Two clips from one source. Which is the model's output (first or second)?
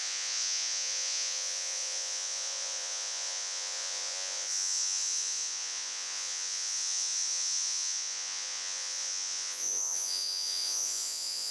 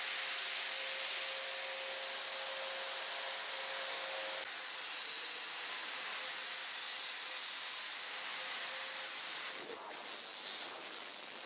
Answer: first